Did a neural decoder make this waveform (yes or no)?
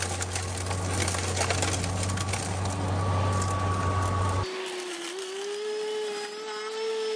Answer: no